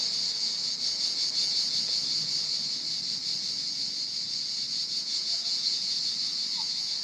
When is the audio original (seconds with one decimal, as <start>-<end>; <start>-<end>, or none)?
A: 0.0-4.8; 6.0-7.0

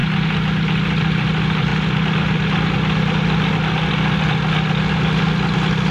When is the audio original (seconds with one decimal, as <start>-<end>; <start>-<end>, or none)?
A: 0.0-5.9

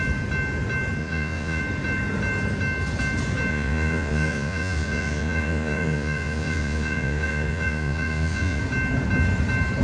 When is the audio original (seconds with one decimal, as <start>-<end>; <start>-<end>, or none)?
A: 0.0-1.0; 1.6-3.5; 8.6-9.8

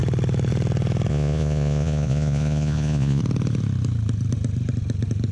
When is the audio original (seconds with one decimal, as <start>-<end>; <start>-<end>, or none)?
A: 0.0-1.1; 3.2-5.3

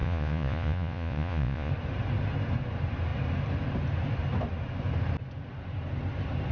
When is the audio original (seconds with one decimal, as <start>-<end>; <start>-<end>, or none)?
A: 1.7-6.5